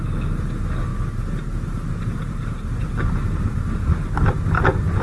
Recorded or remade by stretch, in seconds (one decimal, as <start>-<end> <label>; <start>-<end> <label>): 0.0-5.0 recorded

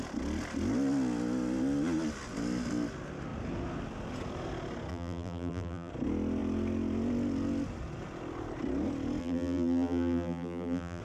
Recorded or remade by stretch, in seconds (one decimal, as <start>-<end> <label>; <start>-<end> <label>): 0.0-4.9 recorded; 4.9-5.9 remade; 5.9-9.2 recorded; 9.2-11.0 remade

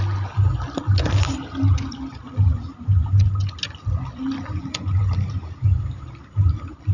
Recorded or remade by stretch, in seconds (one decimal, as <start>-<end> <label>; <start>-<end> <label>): 0.0-5.4 recorded; 5.4-6.3 remade; 6.3-6.9 recorded

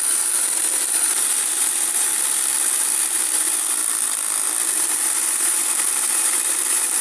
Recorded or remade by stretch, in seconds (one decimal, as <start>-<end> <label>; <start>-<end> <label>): 0.0-2.1 remade; 2.1-3.0 recorded; 3.0-3.8 remade; 3.8-4.7 recorded; 4.7-7.0 remade

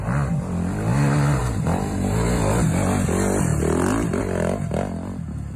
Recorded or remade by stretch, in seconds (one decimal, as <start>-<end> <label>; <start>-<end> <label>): 0.0-1.4 recorded; 1.4-2.7 remade; 2.7-5.6 recorded

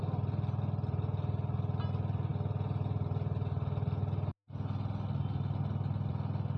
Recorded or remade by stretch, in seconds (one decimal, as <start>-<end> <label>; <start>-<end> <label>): 0.0-6.6 recorded

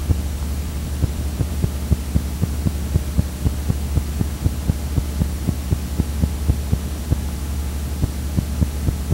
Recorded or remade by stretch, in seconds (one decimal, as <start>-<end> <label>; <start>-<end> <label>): 0.0-1.5 remade; 1.5-9.1 recorded